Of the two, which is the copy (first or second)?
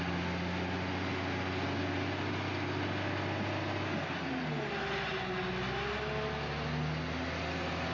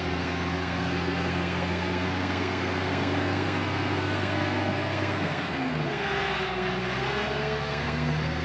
second